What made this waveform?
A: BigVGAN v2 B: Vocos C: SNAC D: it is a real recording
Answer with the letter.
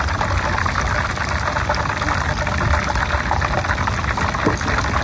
D